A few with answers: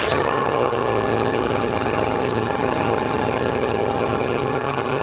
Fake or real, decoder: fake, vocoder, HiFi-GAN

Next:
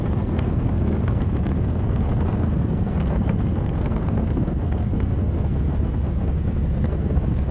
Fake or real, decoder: fake, codec, SNAC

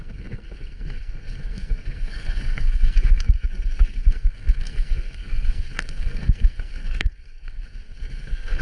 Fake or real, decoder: fake, codec, SNAC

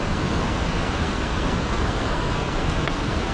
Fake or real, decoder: fake, codec, SNAC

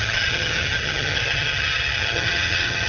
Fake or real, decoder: fake, vocoder, HiFi-GAN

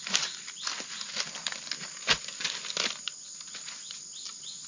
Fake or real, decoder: real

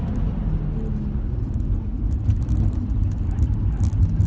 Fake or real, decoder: real